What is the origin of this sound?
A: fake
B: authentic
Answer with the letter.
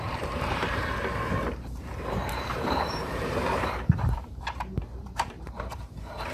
A